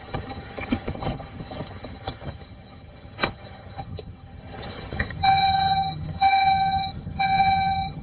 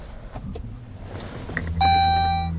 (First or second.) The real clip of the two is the second